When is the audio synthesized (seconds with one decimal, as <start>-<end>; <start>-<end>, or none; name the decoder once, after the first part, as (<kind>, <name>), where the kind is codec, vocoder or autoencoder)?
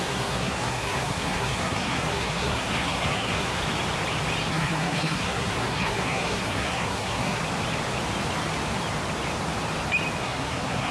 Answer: 0.0-3.6 (codec, SNAC); 4.5-7.4; 10.2-10.9